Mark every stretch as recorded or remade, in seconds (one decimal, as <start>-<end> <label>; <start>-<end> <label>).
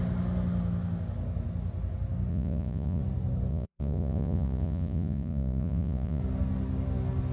0.0-2.3 recorded; 2.3-3.0 remade; 3.0-3.5 recorded; 3.5-6.2 remade; 6.2-7.3 recorded